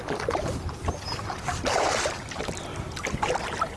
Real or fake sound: real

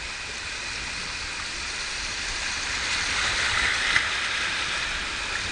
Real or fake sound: real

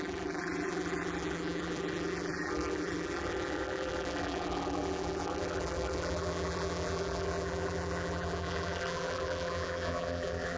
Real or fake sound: fake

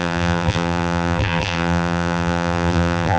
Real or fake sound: fake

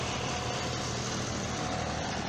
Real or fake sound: real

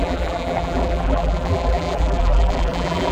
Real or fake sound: fake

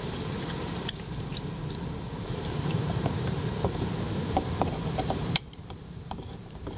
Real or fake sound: fake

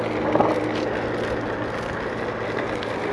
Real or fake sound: real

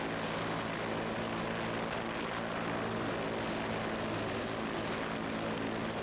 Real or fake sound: real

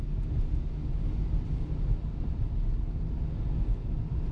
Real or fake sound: real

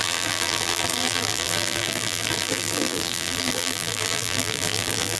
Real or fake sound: fake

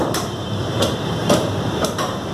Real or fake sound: fake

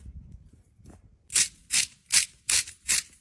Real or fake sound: fake